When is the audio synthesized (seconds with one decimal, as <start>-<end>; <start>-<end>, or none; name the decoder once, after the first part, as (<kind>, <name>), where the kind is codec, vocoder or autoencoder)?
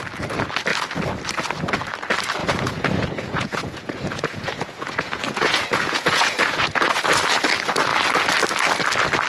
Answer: 2.4-7.0 (vocoder, Vocos)